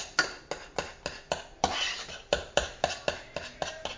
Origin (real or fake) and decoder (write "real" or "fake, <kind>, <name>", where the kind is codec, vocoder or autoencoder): real